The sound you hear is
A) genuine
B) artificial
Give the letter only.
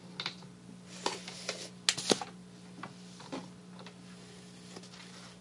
A